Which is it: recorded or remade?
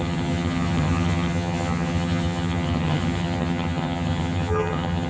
remade